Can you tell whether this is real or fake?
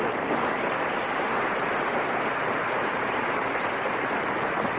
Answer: real